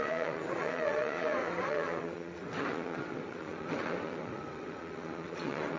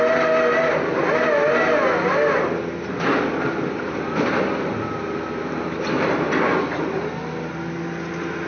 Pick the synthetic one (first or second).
first